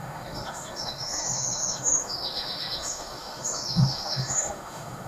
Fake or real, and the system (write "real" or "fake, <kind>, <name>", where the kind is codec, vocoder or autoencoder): fake, autoencoder, DAC-VAE